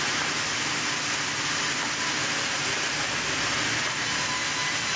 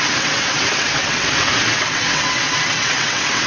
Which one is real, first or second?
first